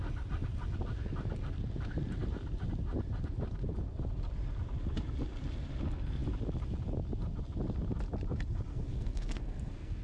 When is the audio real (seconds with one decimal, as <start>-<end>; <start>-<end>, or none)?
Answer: 0.0-8.7